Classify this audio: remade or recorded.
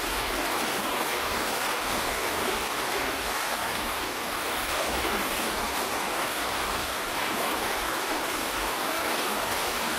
remade